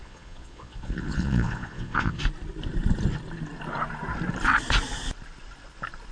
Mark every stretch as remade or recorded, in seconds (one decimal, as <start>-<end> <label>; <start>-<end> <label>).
0.0-2.2 remade; 2.2-6.1 recorded